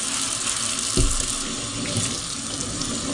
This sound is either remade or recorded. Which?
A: recorded